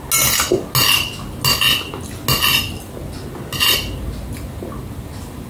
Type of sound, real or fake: real